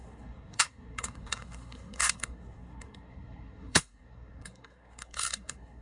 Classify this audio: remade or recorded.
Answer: remade